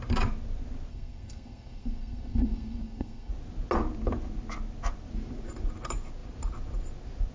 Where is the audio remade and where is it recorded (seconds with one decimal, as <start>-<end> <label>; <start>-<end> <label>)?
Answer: 0.0-0.9 recorded; 0.9-3.3 remade; 3.3-7.3 recorded